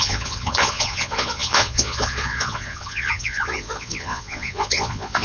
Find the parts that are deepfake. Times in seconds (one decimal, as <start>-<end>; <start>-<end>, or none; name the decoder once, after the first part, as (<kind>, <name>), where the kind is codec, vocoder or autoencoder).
0.0-5.2 (vocoder, Vocos)